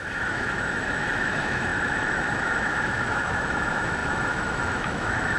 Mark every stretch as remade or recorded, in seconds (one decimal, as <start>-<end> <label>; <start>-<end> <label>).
0.0-5.4 remade